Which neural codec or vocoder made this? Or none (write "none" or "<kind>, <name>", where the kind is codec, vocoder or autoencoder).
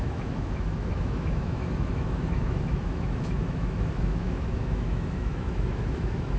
autoencoder, DAC-VAE